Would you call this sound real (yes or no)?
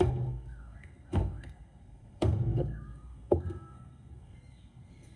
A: no